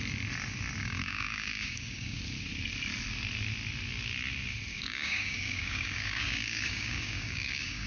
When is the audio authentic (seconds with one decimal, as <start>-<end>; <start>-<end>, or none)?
0.0-0.8; 2.2-4.7